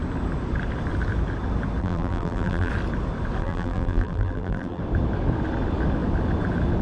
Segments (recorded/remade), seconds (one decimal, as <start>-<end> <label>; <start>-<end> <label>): 0.0-1.8 recorded; 1.8-2.7 remade; 2.7-3.4 recorded; 3.4-4.8 remade; 4.8-6.8 recorded